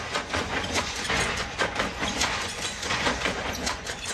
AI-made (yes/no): yes